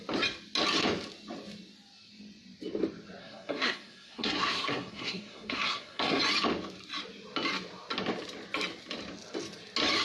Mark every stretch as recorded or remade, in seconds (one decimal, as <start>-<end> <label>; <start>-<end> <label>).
0.0-3.2 recorded; 3.2-6.2 remade; 6.2-10.0 recorded